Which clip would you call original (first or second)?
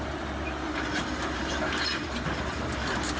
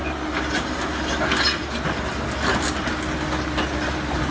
second